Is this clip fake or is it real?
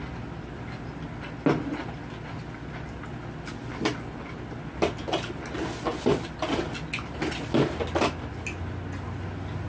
real